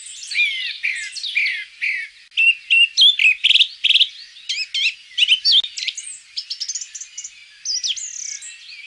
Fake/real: real